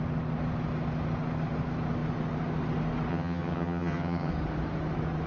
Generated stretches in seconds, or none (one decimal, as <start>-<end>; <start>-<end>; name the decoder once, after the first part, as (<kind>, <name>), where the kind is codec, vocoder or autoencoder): 3.1-4.3 (vocoder, HiFi-GAN)